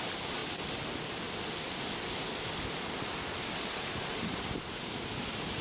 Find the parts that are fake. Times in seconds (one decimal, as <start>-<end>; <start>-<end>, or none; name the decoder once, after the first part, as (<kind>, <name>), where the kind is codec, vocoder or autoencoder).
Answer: 0.0-0.4 (vocoder, BigVGAN v2); 3.8-5.6